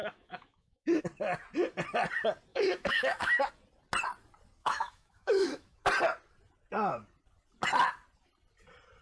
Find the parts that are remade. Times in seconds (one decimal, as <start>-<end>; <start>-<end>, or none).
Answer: 0.0-1.0; 2.5-3.5; 4.6-5.8